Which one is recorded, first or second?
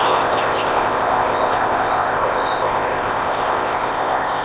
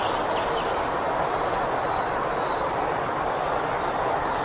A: second